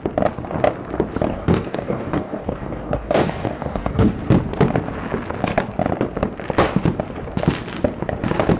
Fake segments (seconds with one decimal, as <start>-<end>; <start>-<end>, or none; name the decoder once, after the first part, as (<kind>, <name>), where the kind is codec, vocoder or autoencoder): 1.3-4.1 (codec, DAC)